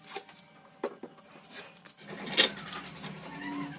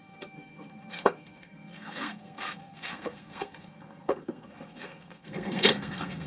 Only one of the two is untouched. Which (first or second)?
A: first